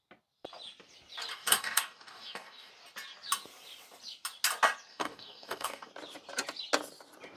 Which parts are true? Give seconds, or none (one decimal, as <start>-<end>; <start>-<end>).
0.0-1.3; 2.7-4.9; 5.9-7.4